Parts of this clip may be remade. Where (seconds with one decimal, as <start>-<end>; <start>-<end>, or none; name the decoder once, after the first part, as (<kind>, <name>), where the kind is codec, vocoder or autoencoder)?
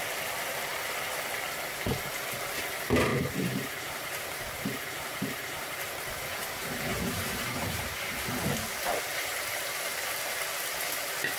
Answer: 3.1-6.1 (vocoder, BigVGAN v2); 6.9-8.0